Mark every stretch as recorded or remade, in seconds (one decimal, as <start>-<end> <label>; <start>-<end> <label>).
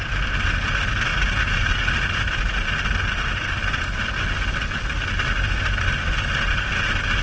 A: 0.0-7.2 recorded